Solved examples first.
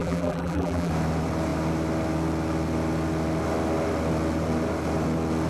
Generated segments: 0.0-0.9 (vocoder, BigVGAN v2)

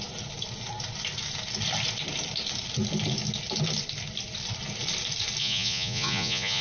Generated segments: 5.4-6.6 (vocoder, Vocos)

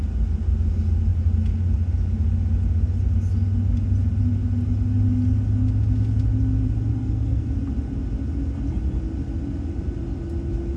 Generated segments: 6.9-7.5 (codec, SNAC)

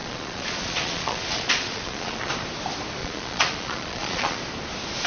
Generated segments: 0.0-2.3 (vocoder, Vocos); 3.0-4.4

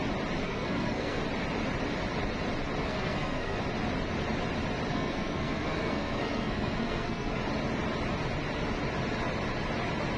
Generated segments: 0.4-1.2 (codec, SNAC); 2.8-3.6; 4.9-7.4

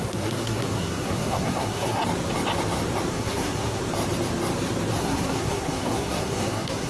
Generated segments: 0.0-2.0 (codec, SNAC); 3.1-3.8; 5.0-6.9

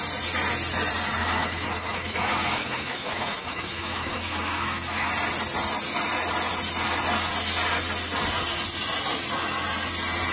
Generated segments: 1.2-5.1 (autoencoder, DAC-VAE)

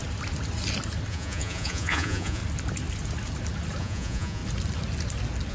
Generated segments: 1.1-2.4 (vocoder, Vocos); 3.8-4.4